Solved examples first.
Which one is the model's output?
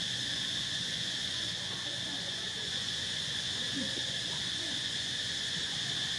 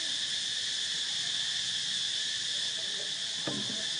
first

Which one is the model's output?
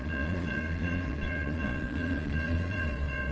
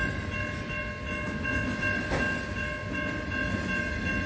first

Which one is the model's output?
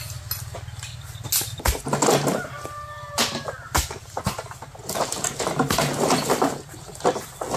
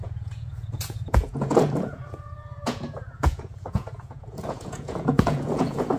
second